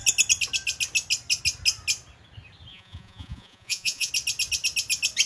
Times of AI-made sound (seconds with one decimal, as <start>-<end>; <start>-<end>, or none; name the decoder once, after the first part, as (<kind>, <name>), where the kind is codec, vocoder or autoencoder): 2.7-4.1 (vocoder, Vocos)